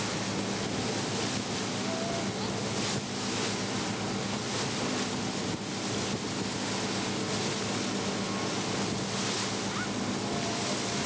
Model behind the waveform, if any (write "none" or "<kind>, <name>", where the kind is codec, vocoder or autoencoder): none